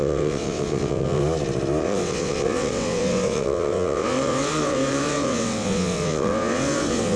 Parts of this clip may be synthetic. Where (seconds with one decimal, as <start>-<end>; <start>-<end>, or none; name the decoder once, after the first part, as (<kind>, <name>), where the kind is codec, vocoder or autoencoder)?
0.0-1.2 (vocoder, WaveNeXt); 1.8-7.2